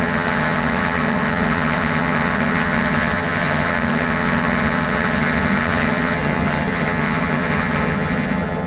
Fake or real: fake